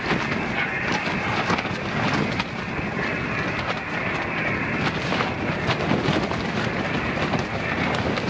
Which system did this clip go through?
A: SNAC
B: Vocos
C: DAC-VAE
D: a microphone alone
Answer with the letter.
D